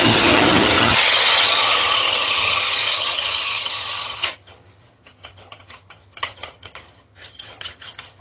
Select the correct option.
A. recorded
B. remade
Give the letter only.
B